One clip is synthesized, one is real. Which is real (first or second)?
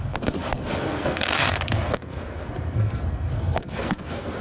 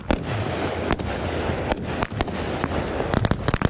second